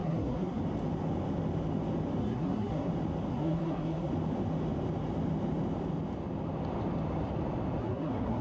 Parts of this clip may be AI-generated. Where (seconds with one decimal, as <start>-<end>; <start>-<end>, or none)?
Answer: 0.0-0.6; 2.2-2.9; 3.3-4.1; 7.8-8.4